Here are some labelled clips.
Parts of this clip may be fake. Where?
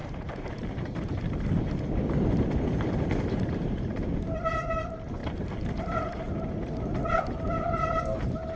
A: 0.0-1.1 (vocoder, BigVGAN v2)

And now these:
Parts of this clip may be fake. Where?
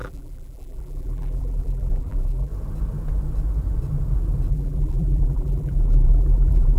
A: 0.0-2.5 (vocoder, BigVGAN v2); 4.5-6.8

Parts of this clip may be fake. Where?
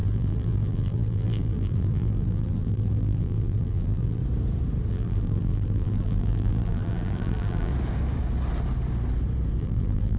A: 0.0-4.2 (vocoder, BigVGAN v2); 4.9-7.7; 9.6-10.2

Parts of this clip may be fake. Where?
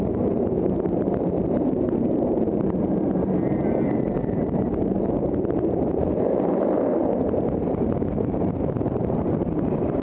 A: 0.0-10.0 (vocoder, BigVGAN v2)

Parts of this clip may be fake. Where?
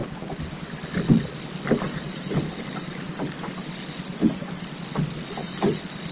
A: 0.0-3.4 (vocoder, BigVGAN v2); 4.2-4.9; 5.4-6.1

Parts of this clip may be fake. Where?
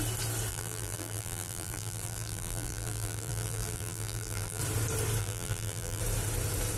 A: 0.5-4.6 (vocoder, BigVGAN v2); 5.2-6.0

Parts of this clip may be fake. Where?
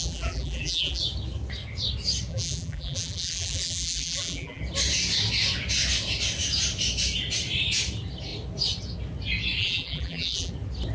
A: 0.0-1.0 (vocoder, BigVGAN v2); 2.3-4.6; 9.6-10.5